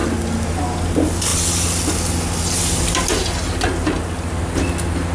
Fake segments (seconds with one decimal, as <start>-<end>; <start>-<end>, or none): none